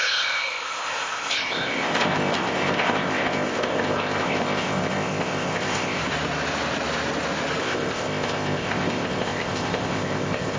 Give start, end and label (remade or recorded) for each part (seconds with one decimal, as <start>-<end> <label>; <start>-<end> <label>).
0.0-6.0 remade; 6.0-7.6 recorded; 7.6-10.6 remade